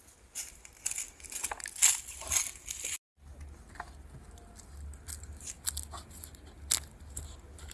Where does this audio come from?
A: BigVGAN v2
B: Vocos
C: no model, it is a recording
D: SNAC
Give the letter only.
C